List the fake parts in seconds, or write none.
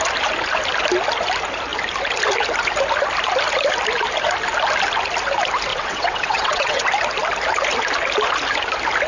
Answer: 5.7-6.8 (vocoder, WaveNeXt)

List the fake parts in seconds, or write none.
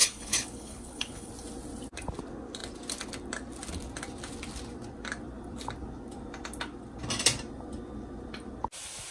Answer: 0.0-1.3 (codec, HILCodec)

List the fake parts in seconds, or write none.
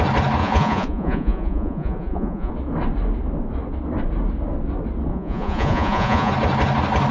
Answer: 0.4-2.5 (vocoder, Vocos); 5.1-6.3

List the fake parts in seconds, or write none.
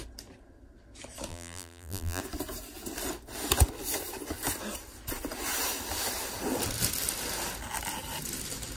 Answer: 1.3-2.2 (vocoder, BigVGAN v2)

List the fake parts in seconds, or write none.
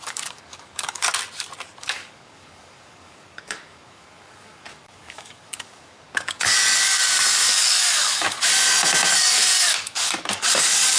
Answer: 0.0-1.0 (codec, DAC); 1.8-8.5; 9.1-11.0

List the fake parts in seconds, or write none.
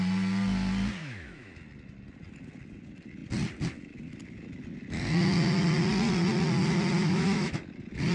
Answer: 1.0-1.6 (autoencoder, DAC-VAE); 7.0-7.6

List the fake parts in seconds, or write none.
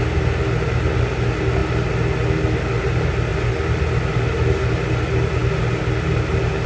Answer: none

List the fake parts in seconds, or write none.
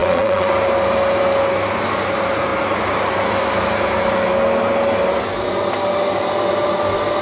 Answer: 0.0-0.5 (vocoder, Vocos)